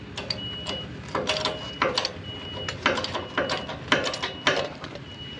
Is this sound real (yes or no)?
yes